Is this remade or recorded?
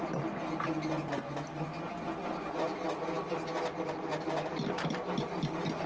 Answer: recorded